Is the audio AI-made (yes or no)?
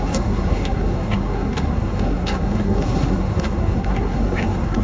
yes